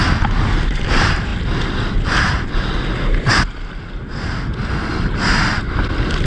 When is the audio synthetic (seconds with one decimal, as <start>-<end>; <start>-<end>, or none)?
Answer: none